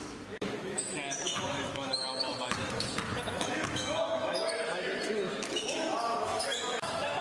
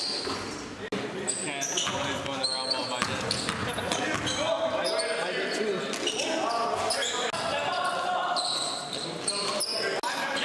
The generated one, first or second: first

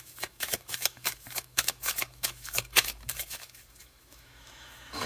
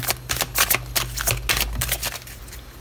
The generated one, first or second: first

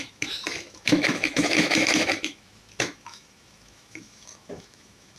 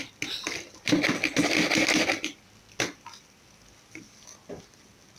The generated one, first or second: first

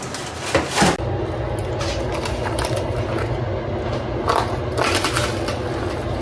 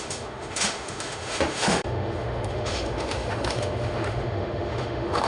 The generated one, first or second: second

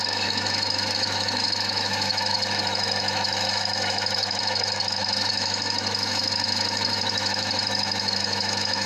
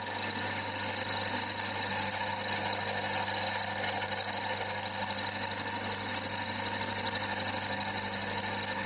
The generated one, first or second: first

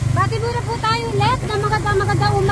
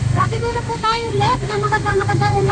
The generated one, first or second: second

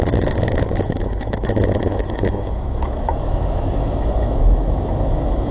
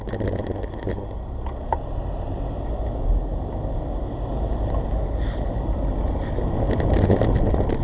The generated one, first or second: first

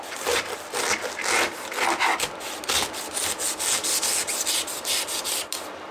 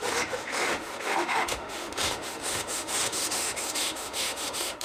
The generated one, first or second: second